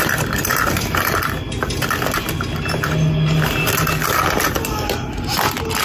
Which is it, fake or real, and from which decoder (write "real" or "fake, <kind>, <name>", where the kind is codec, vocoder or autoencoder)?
real